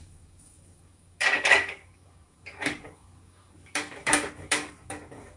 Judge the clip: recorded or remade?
remade